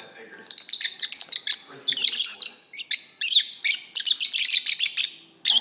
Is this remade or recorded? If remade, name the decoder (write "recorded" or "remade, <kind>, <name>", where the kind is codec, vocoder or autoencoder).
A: recorded